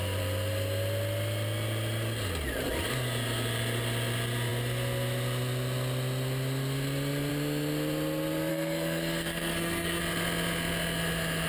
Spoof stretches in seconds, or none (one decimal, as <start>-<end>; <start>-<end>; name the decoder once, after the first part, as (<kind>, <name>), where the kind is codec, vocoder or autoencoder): 8.5-10.0 (codec, SNAC)